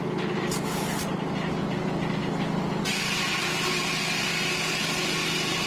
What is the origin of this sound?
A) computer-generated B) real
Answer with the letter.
B